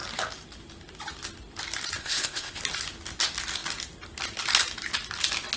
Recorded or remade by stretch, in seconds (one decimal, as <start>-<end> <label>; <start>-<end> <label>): 0.0-2.0 recorded; 2.0-2.6 remade; 2.6-5.6 recorded